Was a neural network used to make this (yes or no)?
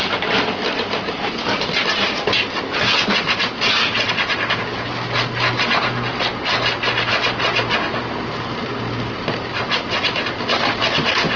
no